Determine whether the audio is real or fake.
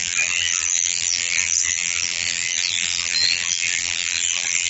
fake